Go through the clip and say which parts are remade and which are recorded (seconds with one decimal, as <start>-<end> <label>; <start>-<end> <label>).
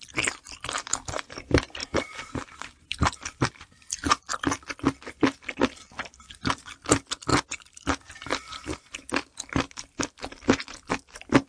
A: 0.0-1.8 recorded; 1.8-3.5 remade; 3.5-11.5 recorded